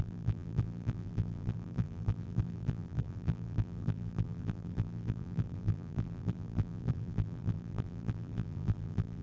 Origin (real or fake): fake